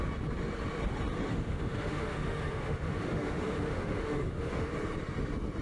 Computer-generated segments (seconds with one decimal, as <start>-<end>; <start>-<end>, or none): 1.3-4.7